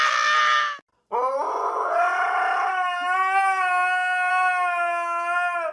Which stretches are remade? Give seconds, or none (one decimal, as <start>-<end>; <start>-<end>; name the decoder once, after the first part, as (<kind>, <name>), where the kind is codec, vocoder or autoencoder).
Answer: none